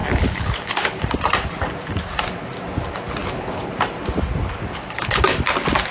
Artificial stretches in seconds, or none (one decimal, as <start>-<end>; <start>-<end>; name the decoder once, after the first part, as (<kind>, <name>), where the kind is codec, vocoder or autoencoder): 0.0-1.0 (codec, HILCodec); 3.2-3.7; 4.7-5.2

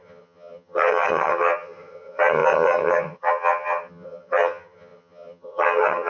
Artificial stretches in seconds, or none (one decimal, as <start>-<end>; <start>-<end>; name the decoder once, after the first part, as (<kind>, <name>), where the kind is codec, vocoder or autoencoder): 0.0-6.1 (vocoder, HiFi-GAN)